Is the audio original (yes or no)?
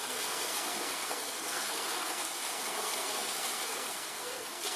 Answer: no